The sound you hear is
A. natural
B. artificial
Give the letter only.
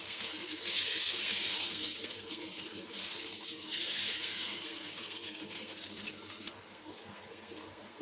B